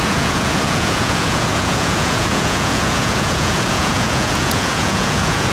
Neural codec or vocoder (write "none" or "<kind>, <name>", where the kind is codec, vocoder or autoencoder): vocoder, Vocos